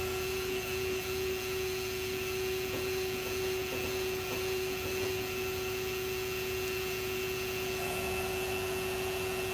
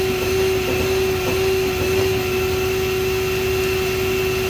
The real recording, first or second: second